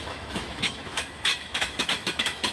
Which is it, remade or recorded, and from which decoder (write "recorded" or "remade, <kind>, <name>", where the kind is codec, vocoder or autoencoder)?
remade, autoencoder, DAC-VAE